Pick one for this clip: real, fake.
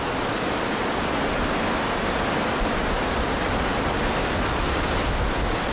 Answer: real